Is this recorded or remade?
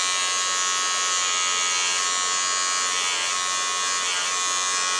recorded